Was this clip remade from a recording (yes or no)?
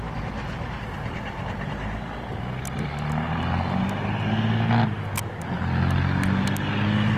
no